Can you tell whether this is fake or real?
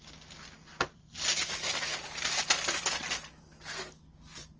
real